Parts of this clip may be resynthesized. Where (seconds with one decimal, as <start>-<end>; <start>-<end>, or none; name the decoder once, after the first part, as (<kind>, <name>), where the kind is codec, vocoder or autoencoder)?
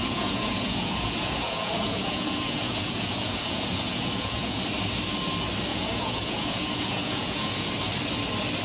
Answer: 0.0-4.6 (vocoder, Vocos); 5.7-7.7